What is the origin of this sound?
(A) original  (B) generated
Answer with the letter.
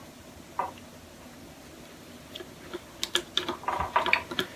A